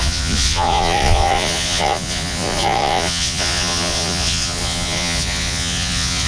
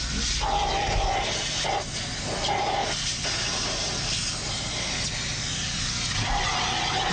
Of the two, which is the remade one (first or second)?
first